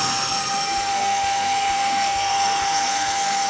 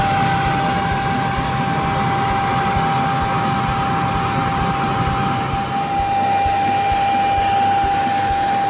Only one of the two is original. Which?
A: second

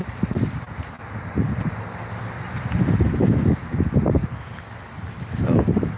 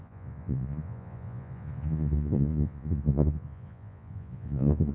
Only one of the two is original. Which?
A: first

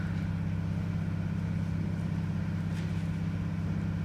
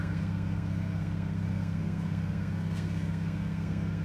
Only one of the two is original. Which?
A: first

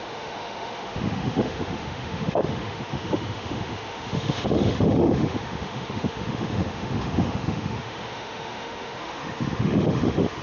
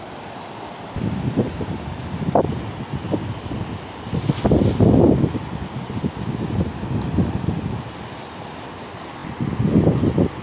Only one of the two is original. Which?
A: second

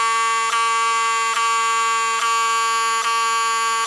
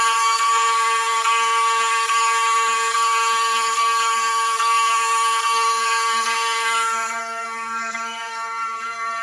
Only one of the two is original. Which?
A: first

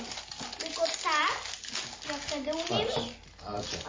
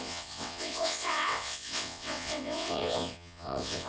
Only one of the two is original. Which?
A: first